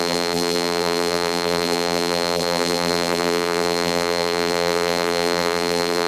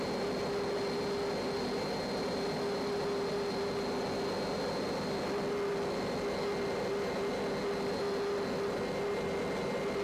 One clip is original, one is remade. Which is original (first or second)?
second